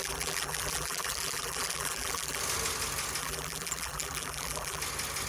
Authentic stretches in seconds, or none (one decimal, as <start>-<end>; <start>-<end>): 2.4-3.2; 4.8-5.3